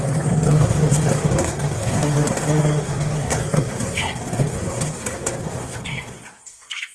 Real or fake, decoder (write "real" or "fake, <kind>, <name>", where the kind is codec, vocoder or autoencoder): fake, codec, SNAC